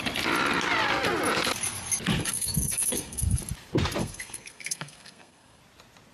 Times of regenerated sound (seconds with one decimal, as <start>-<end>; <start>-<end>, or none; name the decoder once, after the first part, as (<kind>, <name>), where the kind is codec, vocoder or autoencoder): 2.2-3.4 (codec, SNAC); 4.0-5.6